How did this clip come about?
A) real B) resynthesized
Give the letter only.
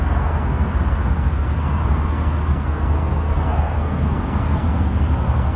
B